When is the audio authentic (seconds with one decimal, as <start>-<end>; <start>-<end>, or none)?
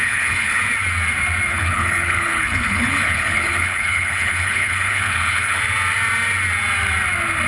0.6-1.5; 5.6-7.5